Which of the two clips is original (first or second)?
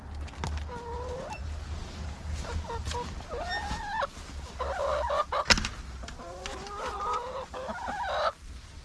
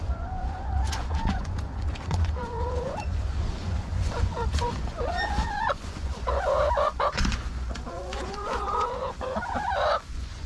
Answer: first